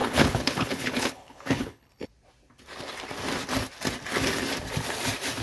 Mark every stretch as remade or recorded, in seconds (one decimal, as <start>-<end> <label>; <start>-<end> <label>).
0.0-2.1 remade; 2.1-5.4 recorded